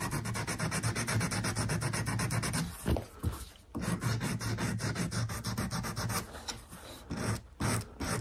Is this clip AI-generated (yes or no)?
no